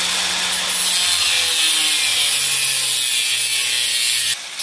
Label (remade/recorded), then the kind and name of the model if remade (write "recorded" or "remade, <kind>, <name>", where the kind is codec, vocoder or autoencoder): recorded